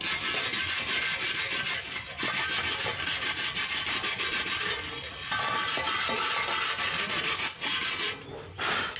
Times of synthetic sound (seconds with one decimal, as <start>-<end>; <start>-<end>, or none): none